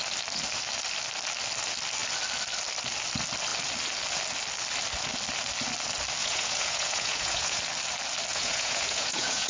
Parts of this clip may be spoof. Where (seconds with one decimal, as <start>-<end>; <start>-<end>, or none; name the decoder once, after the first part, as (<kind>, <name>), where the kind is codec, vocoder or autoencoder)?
6.2-7.6 (vocoder, Vocos); 8.3-9.5